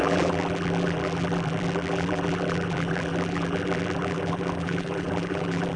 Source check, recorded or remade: remade